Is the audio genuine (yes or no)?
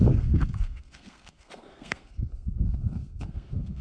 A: no